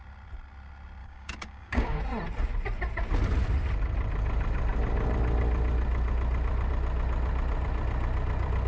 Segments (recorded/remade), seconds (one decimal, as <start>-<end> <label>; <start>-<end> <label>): 0.0-1.0 recorded; 1.0-2.0 remade; 2.0-8.7 recorded